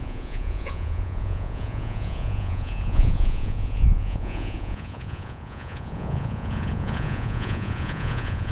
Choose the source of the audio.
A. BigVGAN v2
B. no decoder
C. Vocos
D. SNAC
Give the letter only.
C